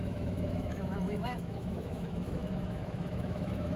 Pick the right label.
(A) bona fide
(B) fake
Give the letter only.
B